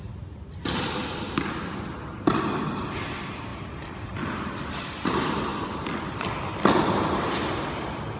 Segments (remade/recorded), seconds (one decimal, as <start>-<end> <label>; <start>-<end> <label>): 0.0-8.2 recorded